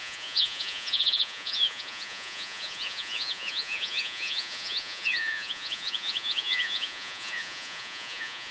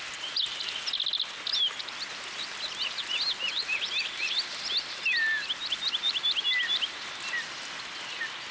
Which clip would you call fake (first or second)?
first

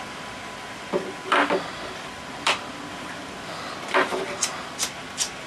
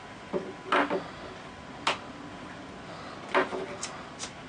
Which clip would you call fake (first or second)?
first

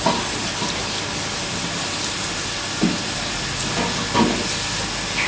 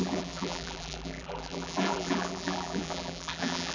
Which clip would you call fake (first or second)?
second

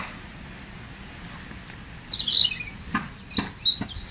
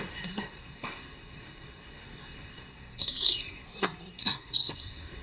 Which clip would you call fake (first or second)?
second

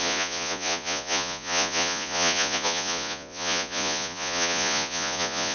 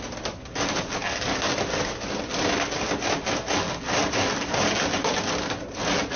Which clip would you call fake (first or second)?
first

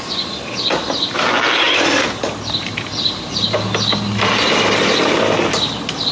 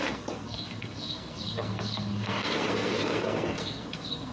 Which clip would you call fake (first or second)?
second